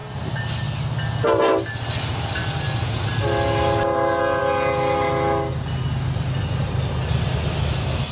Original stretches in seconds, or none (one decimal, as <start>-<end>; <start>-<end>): 0.0-8.1